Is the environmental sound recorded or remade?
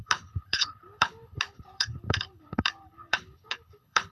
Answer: remade